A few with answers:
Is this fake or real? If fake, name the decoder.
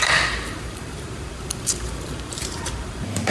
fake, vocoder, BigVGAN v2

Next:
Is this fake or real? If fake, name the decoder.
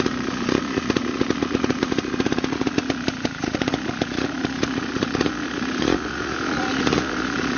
fake, vocoder, Vocos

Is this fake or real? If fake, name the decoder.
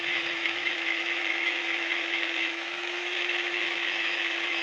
fake, autoencoder, DAC-VAE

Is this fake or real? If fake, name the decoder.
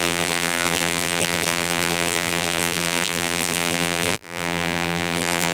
fake, vocoder, BigVGAN v2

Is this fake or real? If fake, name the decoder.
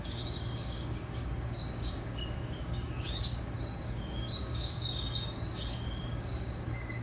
fake, codec, DAC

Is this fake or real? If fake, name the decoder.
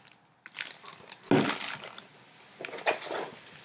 real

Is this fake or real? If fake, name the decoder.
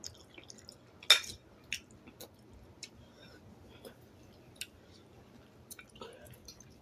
real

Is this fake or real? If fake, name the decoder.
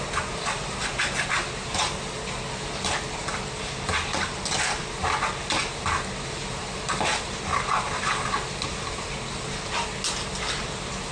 real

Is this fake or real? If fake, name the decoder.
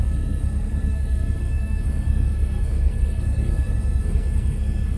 fake, codec, SNAC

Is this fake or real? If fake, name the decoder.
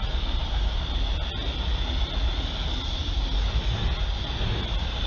real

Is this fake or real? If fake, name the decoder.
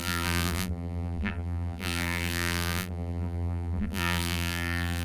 fake, vocoder, BigVGAN v2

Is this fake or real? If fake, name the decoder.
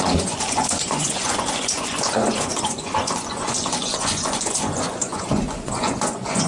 fake, vocoder, Vocos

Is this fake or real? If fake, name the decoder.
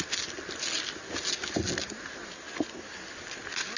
real